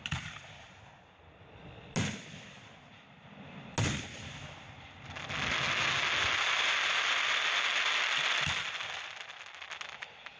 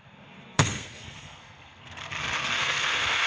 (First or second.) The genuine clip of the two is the first